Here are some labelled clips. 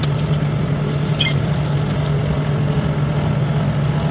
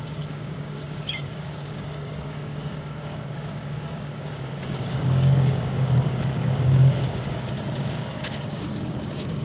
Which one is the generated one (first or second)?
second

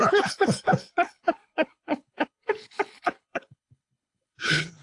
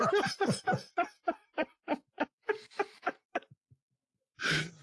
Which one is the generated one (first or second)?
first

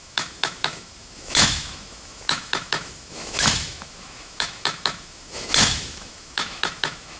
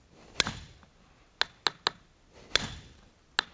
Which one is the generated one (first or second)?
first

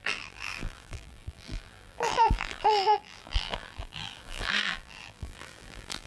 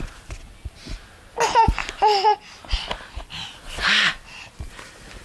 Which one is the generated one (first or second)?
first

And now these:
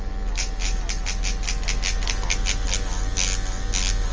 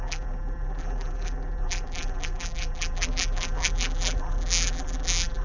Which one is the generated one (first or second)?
second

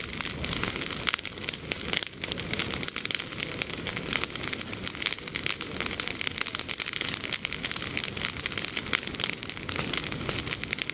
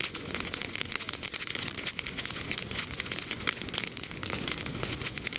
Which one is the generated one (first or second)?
second